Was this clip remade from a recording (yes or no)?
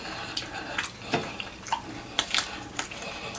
no